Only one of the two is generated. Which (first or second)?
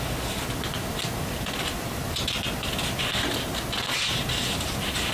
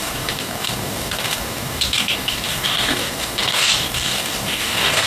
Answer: second